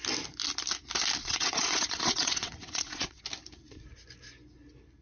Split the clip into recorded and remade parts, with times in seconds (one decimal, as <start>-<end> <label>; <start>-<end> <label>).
0.0-1.2 recorded; 1.2-3.2 remade; 3.2-5.0 recorded

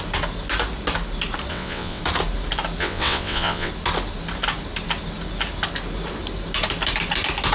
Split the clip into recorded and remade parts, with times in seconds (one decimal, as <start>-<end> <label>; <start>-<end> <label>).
0.0-1.5 recorded; 1.5-2.0 remade; 2.0-2.8 recorded; 2.8-3.7 remade; 3.7-7.5 recorded

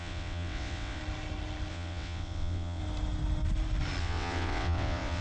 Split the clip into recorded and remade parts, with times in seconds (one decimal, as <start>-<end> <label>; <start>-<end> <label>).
0.0-1.0 remade; 1.0-1.7 recorded; 1.7-2.8 remade; 2.8-4.0 recorded; 4.0-5.2 remade

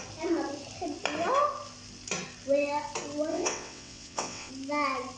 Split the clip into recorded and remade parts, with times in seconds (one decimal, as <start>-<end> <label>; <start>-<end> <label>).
0.0-3.3 recorded; 3.3-4.5 remade; 4.5-5.2 recorded

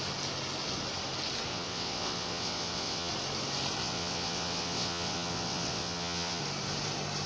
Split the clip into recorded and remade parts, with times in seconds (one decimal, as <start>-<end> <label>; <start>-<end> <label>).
0.0-1.5 recorded; 1.5-3.1 remade; 3.1-3.8 recorded; 3.8-6.4 remade; 6.4-7.3 recorded

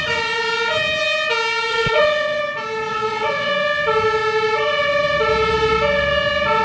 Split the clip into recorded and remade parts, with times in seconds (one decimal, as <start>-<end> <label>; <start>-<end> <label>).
0.0-1.7 recorded; 1.7-2.4 remade; 2.4-2.9 recorded; 2.9-3.5 remade; 3.5-6.6 recorded

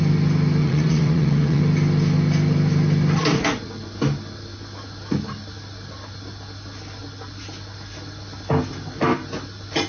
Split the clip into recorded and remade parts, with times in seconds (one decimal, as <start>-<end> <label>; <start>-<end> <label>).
0.0-0.6 recorded; 0.6-1.6 remade; 1.6-9.9 recorded